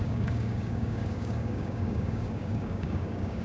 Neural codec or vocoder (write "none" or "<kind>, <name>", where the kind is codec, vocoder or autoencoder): codec, DAC